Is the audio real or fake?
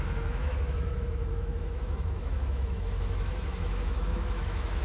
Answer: fake